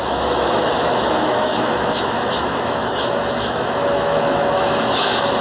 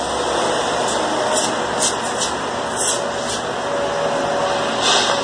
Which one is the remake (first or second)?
first